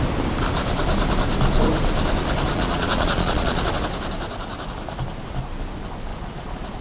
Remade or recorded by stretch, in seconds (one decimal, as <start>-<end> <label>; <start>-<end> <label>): 0.0-2.5 recorded; 2.5-3.7 remade; 3.7-6.1 recorded; 6.1-6.8 remade